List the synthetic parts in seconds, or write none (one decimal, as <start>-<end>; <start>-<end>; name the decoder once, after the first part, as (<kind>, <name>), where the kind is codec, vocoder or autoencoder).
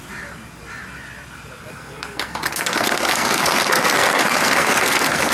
1.7-5.3 (codec, SNAC)